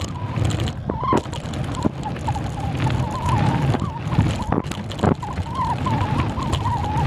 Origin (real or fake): real